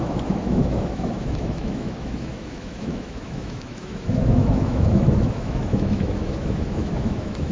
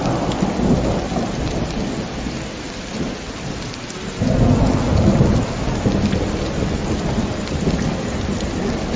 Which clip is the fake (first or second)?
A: first